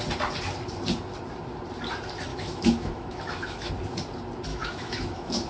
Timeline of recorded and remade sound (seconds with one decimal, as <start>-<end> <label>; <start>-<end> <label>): 0.0-2.3 recorded; 2.3-3.7 remade; 3.7-4.5 recorded; 4.5-5.5 remade